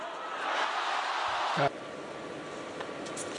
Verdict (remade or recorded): recorded